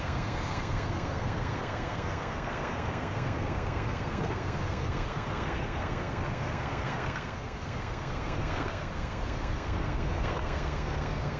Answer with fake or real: fake